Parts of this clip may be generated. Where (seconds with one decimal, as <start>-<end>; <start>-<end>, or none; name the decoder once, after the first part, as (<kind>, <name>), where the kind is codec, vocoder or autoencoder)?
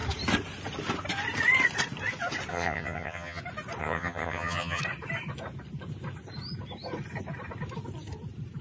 2.5-3.4 (vocoder, HiFi-GAN); 3.8-4.8